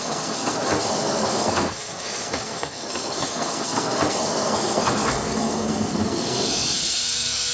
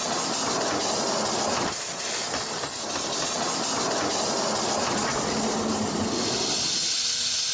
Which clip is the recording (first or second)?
second